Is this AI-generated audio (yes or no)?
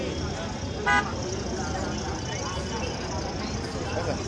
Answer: no